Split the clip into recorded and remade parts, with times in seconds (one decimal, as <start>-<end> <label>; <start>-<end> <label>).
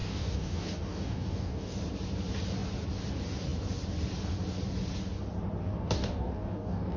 0.0-1.7 remade; 1.7-5.6 recorded; 5.6-7.0 remade